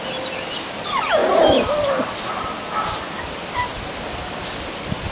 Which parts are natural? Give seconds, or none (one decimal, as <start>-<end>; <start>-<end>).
0.0-5.1